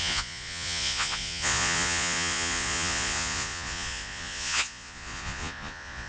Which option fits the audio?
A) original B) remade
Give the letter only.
B